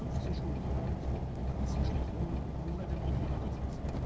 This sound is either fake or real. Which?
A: real